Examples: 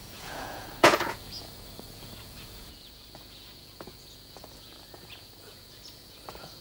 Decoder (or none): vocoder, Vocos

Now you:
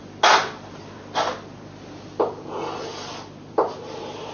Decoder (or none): none